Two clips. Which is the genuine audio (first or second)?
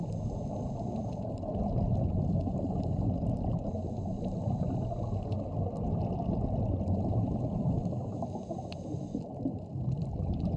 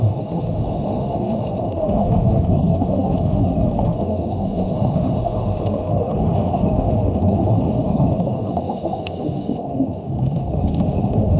first